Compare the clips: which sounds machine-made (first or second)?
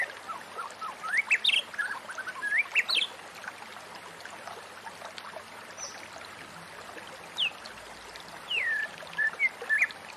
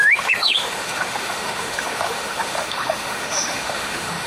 second